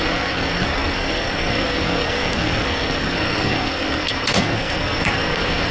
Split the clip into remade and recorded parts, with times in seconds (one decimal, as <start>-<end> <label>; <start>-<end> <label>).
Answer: 0.0-5.7 remade

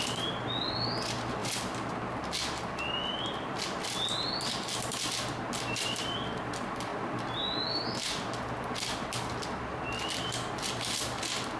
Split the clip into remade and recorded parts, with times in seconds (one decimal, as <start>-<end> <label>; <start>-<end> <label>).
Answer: 0.0-11.6 recorded

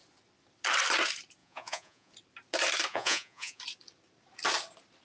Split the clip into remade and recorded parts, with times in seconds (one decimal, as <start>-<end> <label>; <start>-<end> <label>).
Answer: 0.0-1.4 recorded; 1.4-2.1 remade; 2.1-2.9 recorded; 2.9-3.6 remade; 3.6-5.0 recorded

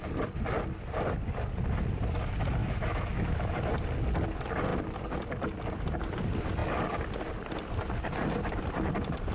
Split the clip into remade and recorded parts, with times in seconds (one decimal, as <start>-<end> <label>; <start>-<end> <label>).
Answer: 0.0-2.6 recorded; 2.6-3.7 remade; 3.7-9.3 recorded